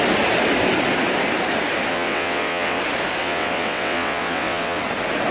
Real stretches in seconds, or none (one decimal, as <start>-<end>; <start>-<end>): 0.0-1.9; 2.8-3.2; 4.8-5.3

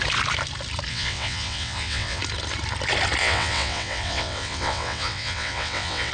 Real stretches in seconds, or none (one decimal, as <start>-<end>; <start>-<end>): 0.0-0.9; 2.2-3.2

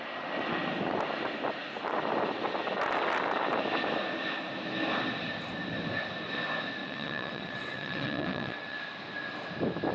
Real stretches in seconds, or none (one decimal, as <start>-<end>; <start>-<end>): 0.0-6.8; 8.8-9.9